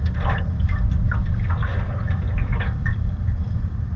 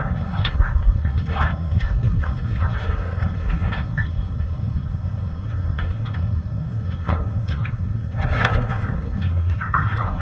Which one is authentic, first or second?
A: first